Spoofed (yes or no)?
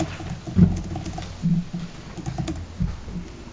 no